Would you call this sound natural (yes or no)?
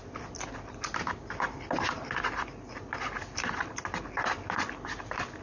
yes